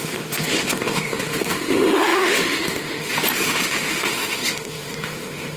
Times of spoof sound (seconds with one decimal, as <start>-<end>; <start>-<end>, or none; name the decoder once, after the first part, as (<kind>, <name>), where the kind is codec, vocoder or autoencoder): 0.0-5.6 (autoencoder, DAC-VAE)